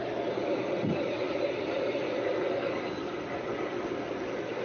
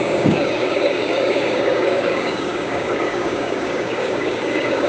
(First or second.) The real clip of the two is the first